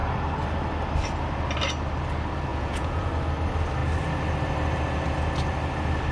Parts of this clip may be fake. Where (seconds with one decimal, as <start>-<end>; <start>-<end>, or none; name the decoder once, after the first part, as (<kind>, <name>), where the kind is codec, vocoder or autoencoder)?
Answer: 2.5-3.1 (vocoder, Vocos)